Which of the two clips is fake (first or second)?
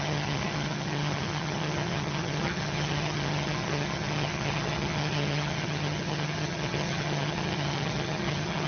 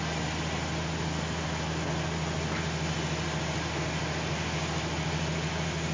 first